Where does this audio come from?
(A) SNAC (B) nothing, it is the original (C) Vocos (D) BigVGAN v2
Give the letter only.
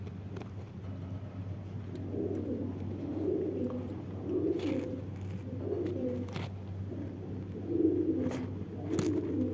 B